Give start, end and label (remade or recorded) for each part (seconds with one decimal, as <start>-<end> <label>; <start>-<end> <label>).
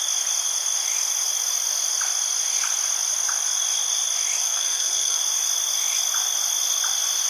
0.0-4.4 recorded; 4.4-5.2 remade; 5.2-7.3 recorded